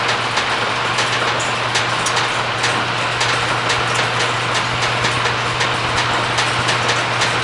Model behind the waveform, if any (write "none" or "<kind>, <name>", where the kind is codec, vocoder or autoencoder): none